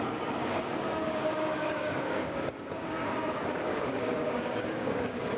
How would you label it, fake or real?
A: fake